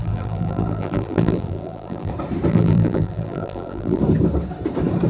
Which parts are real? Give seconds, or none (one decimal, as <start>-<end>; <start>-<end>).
2.1-2.5; 4.0-5.1